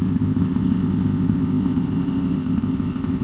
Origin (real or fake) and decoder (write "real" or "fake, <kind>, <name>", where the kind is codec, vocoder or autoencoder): fake, codec, ZipCodec